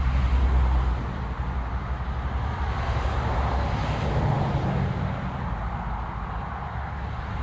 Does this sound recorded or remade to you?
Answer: recorded